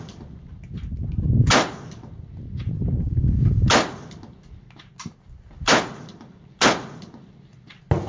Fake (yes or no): no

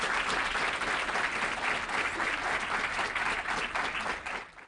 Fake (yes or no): no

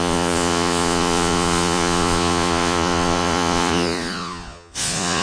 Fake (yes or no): yes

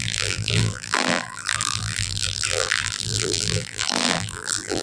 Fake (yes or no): yes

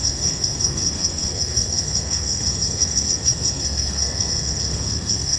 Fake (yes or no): yes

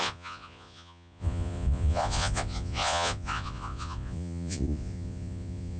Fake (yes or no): yes